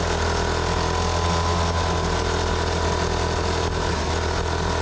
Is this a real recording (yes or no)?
yes